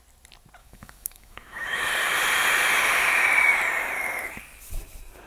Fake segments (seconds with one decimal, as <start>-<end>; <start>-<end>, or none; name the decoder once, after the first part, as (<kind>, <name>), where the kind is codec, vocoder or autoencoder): 0.6-1.9 (autoencoder, DAC-VAE)